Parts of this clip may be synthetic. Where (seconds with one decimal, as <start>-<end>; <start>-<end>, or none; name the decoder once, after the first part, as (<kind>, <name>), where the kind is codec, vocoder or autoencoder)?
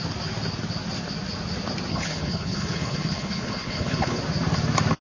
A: 1.9-4.2 (codec, HILCodec)